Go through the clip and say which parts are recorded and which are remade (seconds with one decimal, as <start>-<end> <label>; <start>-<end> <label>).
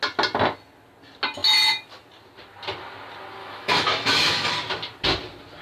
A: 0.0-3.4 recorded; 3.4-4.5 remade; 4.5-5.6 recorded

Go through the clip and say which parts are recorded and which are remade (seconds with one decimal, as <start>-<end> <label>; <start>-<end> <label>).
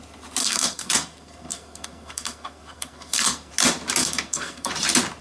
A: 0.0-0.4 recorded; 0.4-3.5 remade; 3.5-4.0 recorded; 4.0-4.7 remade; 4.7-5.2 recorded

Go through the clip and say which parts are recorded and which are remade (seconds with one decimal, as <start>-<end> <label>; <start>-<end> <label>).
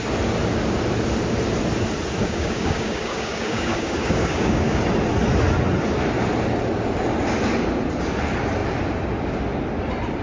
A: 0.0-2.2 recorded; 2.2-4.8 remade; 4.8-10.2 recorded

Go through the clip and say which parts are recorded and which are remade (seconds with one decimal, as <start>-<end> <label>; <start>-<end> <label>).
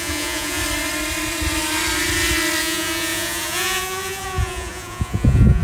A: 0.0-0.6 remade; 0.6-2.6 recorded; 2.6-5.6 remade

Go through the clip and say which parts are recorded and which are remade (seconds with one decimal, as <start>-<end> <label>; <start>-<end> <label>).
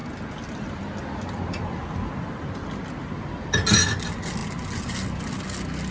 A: 0.0-5.9 recorded